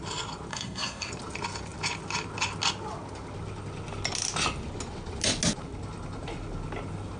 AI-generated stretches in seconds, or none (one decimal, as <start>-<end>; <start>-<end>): 0.5-1.1